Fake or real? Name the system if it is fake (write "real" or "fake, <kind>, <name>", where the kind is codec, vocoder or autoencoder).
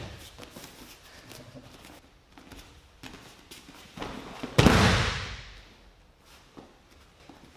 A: real